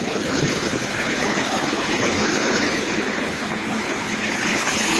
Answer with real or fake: fake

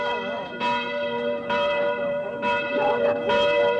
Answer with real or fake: real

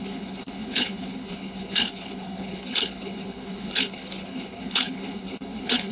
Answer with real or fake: fake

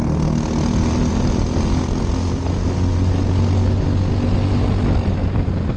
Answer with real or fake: real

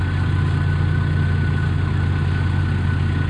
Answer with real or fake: real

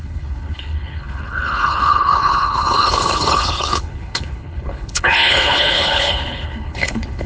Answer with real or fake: fake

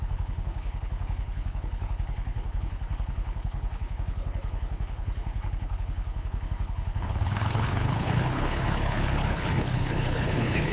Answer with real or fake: fake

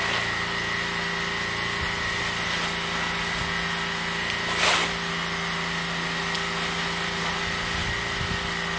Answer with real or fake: real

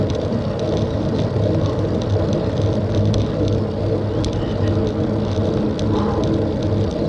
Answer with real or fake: real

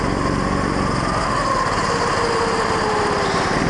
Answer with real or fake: real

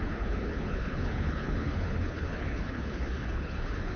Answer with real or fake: fake